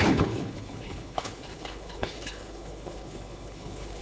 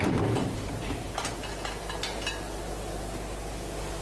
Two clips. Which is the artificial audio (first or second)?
first